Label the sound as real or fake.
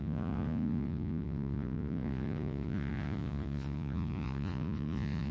fake